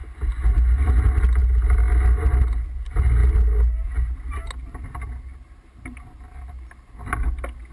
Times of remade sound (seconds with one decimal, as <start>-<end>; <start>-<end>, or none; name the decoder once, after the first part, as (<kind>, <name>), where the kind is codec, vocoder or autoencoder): none